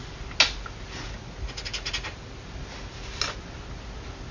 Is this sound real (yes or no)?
yes